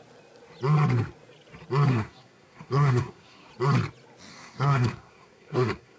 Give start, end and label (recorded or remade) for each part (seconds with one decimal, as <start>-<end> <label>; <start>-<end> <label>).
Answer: 0.0-1.9 recorded; 1.9-3.5 remade; 3.5-4.3 recorded; 4.3-6.0 remade